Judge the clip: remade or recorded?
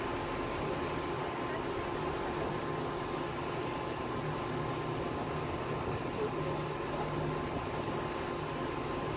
recorded